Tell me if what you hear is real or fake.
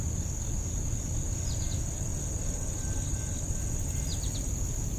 real